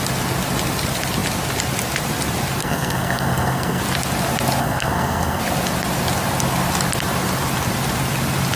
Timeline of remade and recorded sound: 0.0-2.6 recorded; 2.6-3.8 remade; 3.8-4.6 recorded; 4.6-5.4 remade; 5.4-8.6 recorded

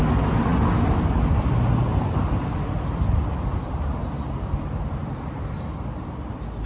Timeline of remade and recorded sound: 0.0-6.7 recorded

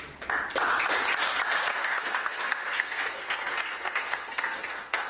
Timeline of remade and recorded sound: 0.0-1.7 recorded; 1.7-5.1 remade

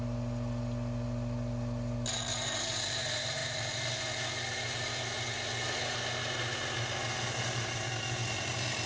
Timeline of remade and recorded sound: 0.0-8.9 recorded